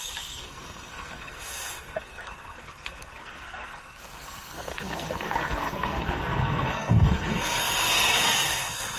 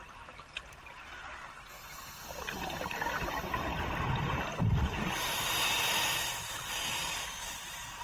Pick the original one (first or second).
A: second